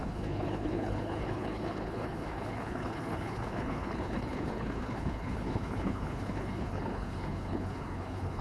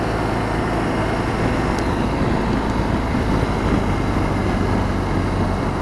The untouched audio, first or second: second